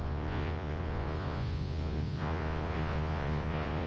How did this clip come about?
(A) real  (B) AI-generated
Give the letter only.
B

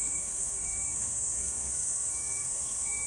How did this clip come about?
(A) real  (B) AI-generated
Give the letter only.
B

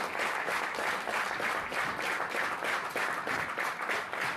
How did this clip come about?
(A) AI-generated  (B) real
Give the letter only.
B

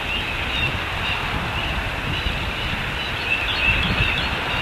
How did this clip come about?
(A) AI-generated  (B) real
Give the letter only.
B